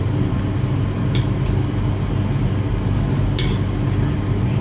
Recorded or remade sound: recorded